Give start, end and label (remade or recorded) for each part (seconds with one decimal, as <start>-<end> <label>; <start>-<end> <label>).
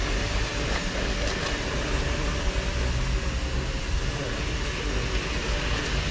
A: 0.0-6.1 recorded